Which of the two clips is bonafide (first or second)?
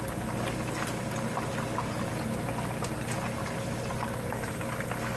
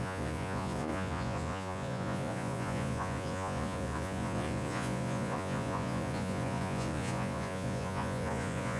first